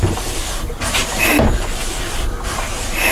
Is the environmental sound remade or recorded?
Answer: recorded